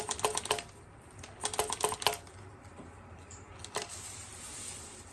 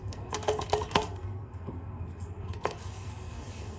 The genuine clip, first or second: first